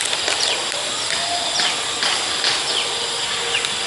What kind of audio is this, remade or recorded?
recorded